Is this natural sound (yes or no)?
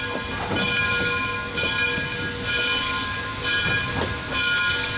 yes